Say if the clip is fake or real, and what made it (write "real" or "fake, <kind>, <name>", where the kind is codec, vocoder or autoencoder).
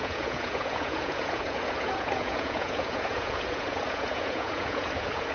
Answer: fake, vocoder, Vocos